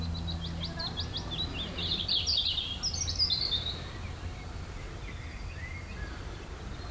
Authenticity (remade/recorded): recorded